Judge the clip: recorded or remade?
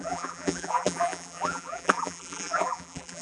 remade